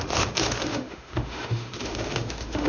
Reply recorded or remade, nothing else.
remade